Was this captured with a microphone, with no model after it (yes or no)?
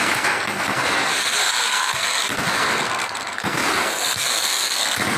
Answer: no